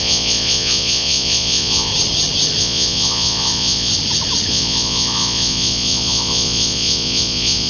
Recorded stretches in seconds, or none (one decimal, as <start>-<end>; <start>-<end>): 1.9-2.6; 3.9-4.5